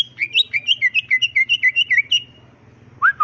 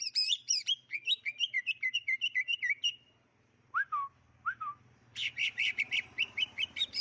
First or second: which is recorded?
first